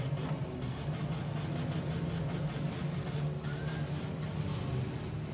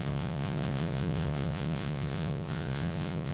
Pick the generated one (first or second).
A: second